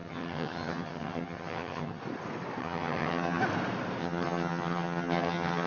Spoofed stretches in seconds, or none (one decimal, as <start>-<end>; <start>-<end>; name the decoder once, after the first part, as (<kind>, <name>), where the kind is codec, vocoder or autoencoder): 0.0-2.0 (vocoder, HiFi-GAN); 2.6-3.4; 4.0-5.7